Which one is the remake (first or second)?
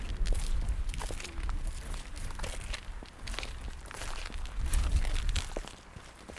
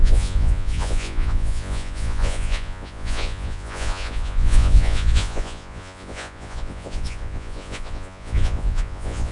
second